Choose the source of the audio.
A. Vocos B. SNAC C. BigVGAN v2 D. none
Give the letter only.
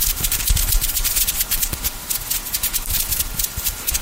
C